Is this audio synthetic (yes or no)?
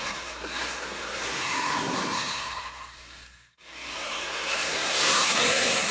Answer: yes